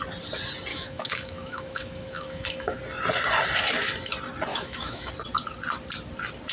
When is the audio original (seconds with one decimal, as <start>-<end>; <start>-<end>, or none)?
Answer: 0.0-0.7; 2.8-4.5; 5.1-6.5

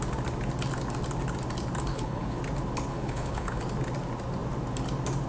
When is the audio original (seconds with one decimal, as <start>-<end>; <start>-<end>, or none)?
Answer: 0.0-1.9; 2.4-2.9; 3.6-5.3

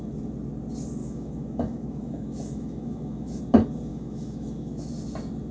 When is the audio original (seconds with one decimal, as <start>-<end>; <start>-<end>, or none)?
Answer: 0.0-1.0; 3.4-3.9; 4.9-5.5

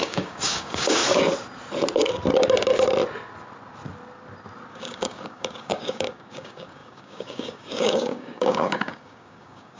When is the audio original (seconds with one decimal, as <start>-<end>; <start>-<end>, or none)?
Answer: 1.0-4.7